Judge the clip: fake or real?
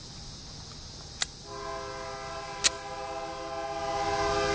real